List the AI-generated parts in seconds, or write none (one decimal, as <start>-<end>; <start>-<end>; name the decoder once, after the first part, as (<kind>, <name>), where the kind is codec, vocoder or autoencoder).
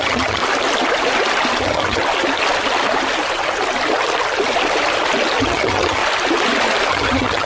0.0-0.4 (vocoder, HiFi-GAN); 1.6-2.0; 5.4-6.0; 6.9-7.5